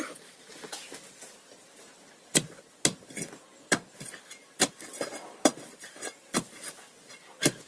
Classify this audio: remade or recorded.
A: recorded